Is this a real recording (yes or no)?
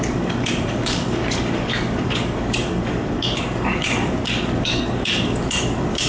no